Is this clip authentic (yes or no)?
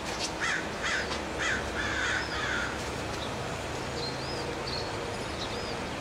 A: yes